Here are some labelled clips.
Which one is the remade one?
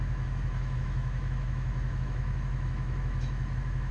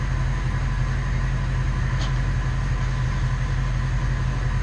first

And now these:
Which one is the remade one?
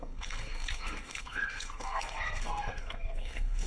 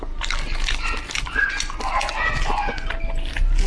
first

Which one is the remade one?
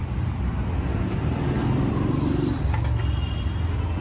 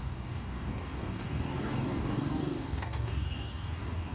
second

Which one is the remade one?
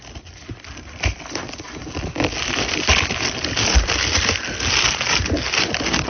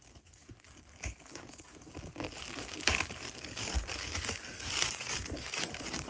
second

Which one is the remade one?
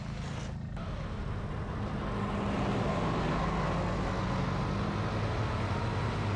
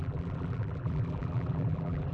second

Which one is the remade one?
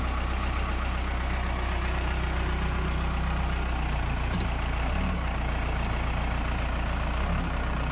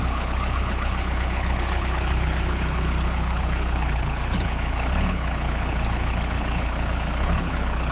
second